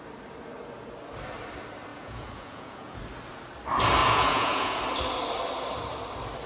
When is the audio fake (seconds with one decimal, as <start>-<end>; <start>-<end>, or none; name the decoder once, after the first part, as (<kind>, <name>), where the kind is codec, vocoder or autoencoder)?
1.9-3.0 (vocoder, Vocos); 4.0-4.8